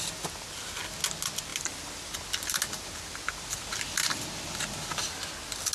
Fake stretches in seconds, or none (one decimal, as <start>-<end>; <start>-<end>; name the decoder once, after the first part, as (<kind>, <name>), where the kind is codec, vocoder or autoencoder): 1.5-4.6 (vocoder, BigVGAN v2)